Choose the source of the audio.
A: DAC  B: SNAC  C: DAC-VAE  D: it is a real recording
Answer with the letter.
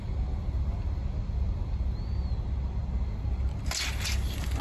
D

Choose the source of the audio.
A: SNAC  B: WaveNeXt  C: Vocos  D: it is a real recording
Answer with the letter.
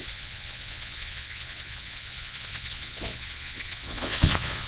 C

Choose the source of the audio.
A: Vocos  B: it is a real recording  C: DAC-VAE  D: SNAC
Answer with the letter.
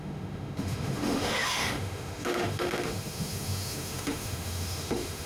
C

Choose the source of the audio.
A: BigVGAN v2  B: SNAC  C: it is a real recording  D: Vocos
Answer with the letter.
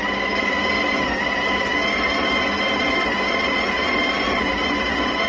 C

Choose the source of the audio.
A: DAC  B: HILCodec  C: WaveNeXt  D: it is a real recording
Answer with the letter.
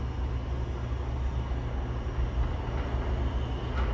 D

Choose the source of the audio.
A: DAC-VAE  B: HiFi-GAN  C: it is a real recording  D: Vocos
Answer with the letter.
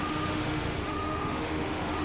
A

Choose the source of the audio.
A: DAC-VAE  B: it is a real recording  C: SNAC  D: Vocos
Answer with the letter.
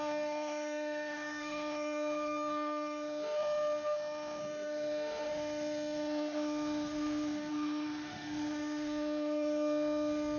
A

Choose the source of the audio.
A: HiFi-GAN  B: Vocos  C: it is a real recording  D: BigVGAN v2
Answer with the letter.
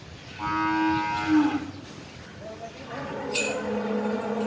C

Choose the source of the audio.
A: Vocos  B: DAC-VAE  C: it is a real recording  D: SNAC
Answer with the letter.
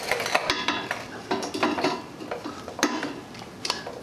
C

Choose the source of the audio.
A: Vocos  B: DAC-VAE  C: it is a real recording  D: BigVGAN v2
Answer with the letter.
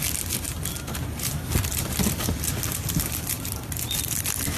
C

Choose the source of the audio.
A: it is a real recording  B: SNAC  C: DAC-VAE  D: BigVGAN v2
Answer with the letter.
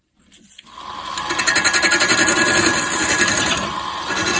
A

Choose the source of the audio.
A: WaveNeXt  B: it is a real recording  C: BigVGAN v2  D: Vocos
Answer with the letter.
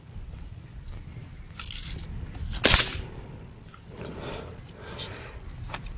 B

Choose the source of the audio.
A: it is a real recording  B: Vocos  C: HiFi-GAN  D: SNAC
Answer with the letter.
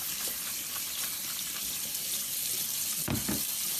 A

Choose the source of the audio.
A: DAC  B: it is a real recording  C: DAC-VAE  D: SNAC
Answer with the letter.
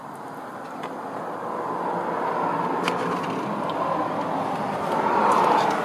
B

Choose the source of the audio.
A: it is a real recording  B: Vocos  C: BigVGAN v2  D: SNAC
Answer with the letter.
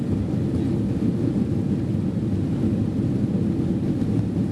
A